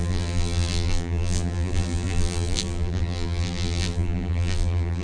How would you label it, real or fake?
fake